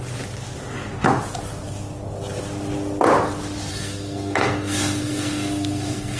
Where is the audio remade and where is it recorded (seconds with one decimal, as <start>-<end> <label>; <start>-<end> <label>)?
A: 0.0-3.7 recorded; 3.7-6.2 remade